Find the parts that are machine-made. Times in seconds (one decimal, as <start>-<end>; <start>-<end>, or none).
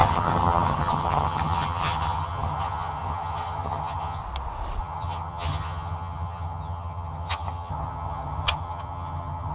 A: 0.0-4.2; 4.8-9.5